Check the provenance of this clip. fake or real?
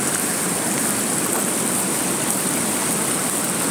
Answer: real